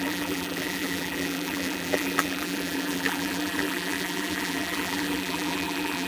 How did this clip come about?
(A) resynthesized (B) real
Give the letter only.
A